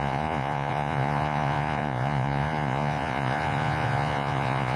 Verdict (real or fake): fake